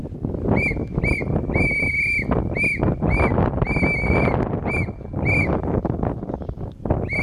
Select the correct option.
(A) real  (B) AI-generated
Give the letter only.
A